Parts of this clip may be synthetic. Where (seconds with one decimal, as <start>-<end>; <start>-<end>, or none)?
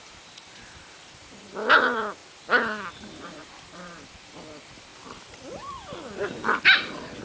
0.0-2.2; 2.9-4.9